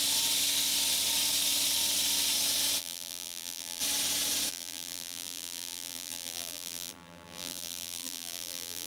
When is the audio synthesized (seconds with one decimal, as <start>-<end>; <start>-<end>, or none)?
2.8-3.8; 4.5-8.9